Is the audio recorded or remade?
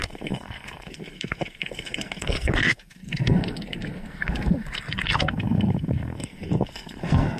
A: remade